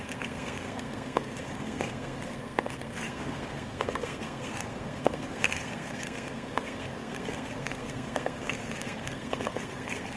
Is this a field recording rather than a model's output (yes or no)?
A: no